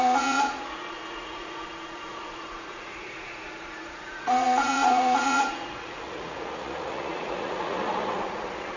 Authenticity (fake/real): fake